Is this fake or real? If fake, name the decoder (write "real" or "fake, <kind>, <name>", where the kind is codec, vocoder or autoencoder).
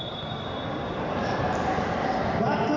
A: real